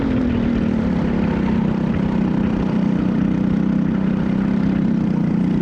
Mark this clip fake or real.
real